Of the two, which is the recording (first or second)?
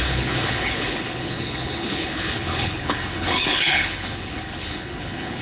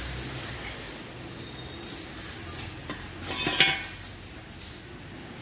second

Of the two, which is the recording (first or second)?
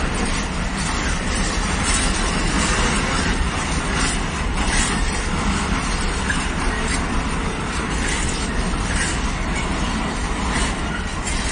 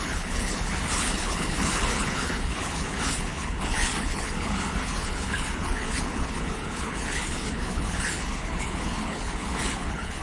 first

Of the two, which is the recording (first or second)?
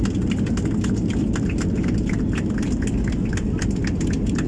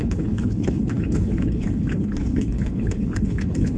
first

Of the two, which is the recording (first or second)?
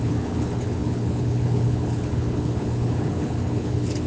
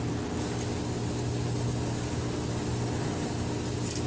second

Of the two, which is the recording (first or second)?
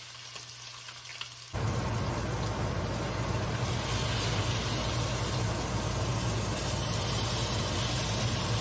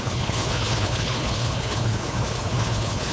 first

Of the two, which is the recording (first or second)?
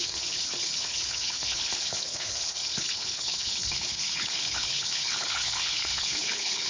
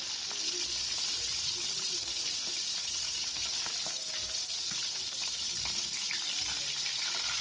second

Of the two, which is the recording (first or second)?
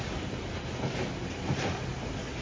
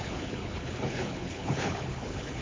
first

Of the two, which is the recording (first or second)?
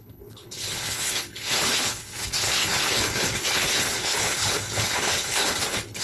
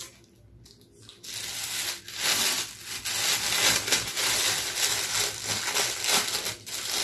second